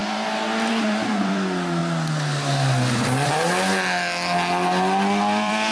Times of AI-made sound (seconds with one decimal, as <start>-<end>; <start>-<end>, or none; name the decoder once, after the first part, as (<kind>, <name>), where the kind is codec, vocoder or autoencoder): 0.0-1.8 (vocoder, BigVGAN v2); 5.2-5.7